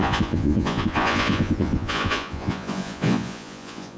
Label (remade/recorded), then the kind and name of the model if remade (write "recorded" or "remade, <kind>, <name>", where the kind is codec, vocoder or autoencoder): remade, vocoder, Vocos